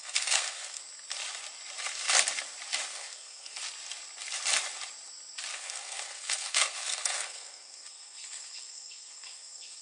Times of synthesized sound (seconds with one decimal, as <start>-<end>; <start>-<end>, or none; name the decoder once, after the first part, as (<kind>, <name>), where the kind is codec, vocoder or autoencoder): 0.0-0.8 (codec, SNAC); 2.9-3.6; 5.5-9.8